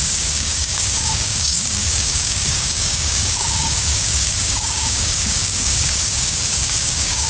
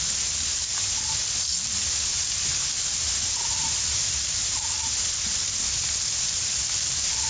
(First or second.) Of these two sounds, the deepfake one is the first